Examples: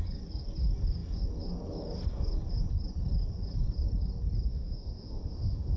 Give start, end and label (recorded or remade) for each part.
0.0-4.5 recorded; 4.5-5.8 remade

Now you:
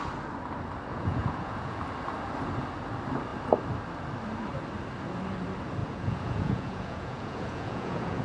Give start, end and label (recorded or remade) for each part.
0.0-0.9 recorded; 0.9-1.8 remade; 1.8-5.8 recorded; 5.8-8.2 remade

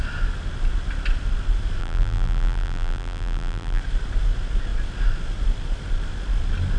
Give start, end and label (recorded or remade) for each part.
0.0-1.8 recorded; 1.8-3.8 remade; 3.8-6.8 recorded

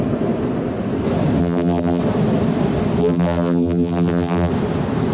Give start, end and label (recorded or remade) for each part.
0.0-1.4 recorded; 1.4-2.0 remade; 2.0-3.0 recorded; 3.0-4.5 remade; 4.5-5.1 recorded